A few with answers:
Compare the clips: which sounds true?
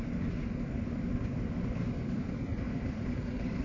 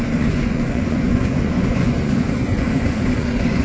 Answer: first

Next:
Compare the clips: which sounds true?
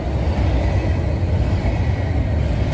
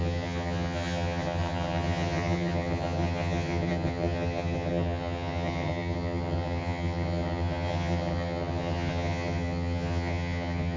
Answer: first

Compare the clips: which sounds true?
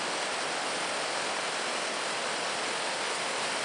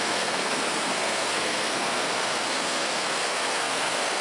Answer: first